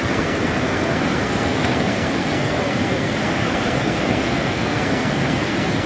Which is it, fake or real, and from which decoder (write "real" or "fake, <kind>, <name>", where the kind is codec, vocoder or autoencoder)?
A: fake, codec, SNAC